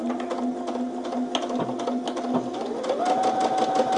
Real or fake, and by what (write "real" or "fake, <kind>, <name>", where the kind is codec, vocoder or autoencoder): real